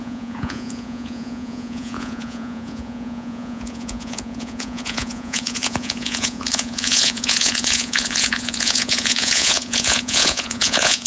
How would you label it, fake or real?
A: fake